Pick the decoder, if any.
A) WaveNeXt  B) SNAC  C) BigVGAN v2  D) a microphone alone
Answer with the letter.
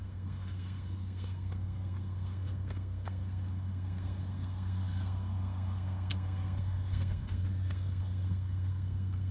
B